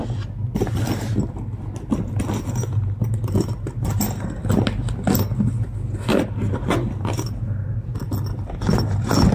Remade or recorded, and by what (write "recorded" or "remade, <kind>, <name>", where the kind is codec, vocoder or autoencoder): recorded